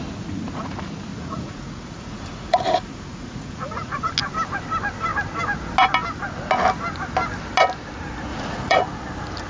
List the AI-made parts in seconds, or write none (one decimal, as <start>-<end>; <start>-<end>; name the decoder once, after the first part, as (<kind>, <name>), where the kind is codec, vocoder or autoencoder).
1.1-4.1 (vocoder, Vocos); 8.3-8.8